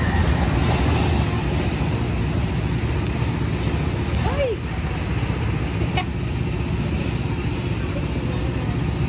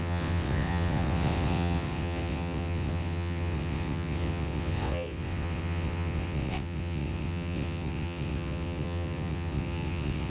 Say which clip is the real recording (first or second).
first